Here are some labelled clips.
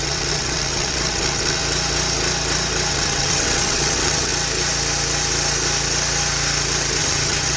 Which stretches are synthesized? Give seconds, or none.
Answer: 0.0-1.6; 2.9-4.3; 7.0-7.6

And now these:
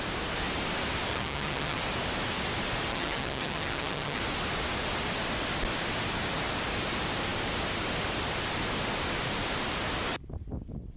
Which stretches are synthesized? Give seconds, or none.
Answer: 1.1-1.8; 2.9-4.2

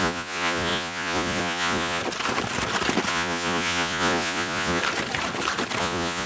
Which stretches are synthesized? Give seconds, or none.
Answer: 0.0-2.0; 3.1-4.8; 5.8-6.3

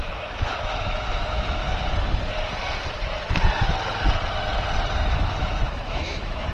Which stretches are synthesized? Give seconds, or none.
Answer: 0.0-1.6; 5.1-6.5

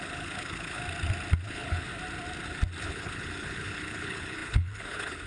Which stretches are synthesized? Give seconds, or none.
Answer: 0.0-0.8; 1.5-1.9; 2.8-5.3

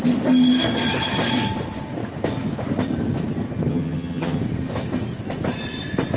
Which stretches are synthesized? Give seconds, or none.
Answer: 3.7-4.4

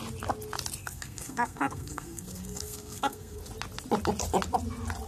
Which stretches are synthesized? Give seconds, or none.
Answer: 0.8-3.4

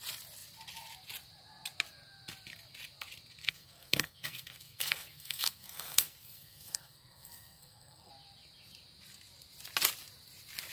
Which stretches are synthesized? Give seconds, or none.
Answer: 3.4-8.1